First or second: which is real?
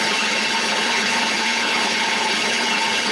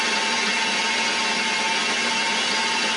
second